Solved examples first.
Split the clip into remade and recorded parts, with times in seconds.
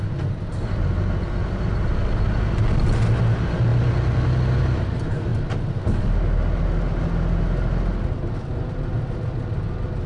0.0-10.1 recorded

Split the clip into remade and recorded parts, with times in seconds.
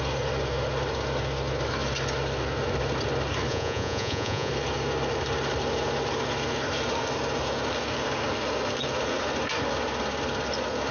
0.0-3.5 recorded; 3.5-4.5 remade; 4.5-10.9 recorded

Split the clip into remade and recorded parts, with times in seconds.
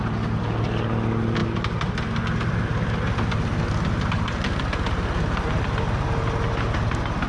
0.0-7.3 recorded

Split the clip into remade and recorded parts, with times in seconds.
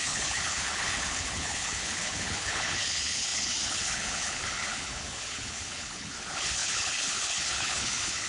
0.0-8.3 remade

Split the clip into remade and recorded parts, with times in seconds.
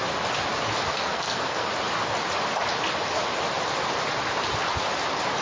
0.0-0.9 recorded; 0.9-1.7 remade; 1.7-5.4 recorded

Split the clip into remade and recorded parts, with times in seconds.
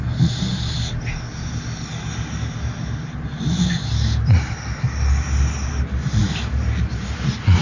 0.0-7.6 recorded